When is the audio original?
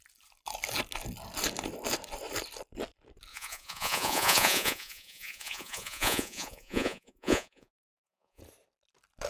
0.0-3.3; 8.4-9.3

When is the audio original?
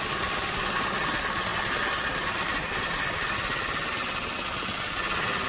0.0-5.5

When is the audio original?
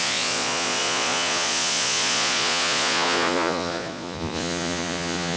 none